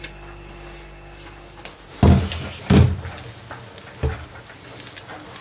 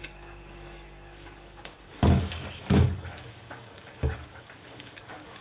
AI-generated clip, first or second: second